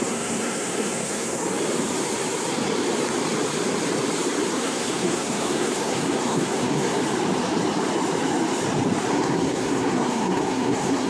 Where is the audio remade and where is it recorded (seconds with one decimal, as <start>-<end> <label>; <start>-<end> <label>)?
0.0-1.4 remade; 1.4-4.5 recorded; 4.5-7.0 remade; 7.0-9.1 recorded; 9.1-11.1 remade